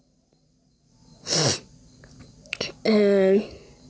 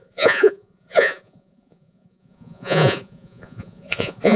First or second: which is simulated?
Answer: second